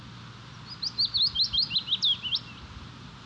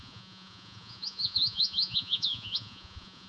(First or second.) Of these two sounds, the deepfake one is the second